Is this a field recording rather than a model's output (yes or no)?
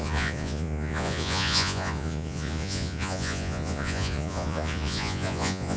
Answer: no